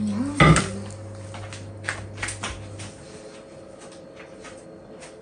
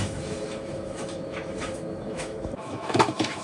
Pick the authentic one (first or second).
first